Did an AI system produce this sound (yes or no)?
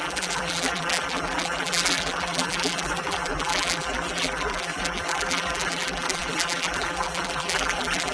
yes